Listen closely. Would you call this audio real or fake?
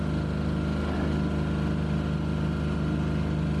real